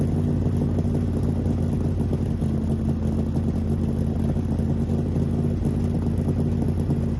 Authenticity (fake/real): real